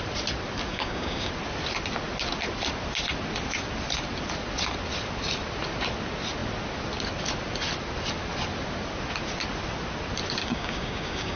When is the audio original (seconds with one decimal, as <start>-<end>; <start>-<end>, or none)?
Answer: 0.0-0.7; 1.3-10.4